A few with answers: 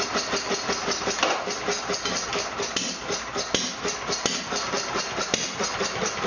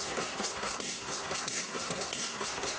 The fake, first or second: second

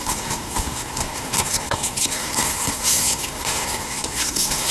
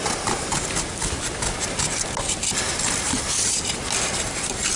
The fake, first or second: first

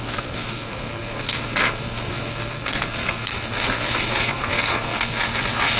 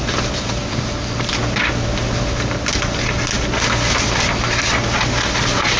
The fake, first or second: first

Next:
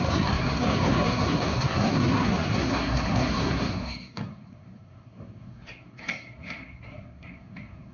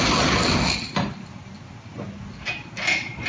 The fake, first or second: first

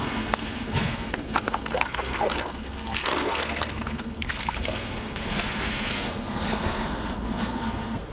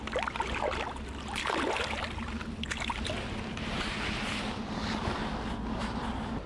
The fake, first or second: first